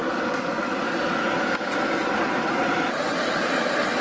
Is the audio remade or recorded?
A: recorded